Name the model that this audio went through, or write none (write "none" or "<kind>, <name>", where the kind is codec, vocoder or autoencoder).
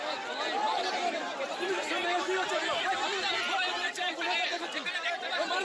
vocoder, BigVGAN v2